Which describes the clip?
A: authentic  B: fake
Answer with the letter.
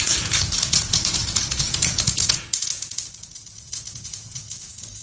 B